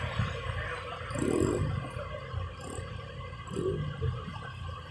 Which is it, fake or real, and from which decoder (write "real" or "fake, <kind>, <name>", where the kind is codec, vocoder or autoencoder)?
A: real